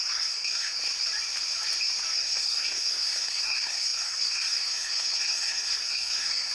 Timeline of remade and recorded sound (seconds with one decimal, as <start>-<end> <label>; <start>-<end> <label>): 0.0-0.8 remade; 0.8-2.1 recorded; 2.1-6.5 remade